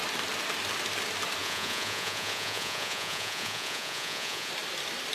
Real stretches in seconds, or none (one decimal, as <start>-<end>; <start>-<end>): 0.0-1.4; 4.5-5.1